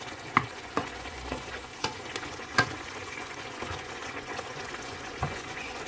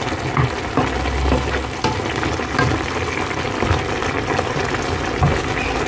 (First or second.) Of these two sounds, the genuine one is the second